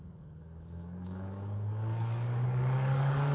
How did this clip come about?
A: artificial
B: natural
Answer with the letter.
A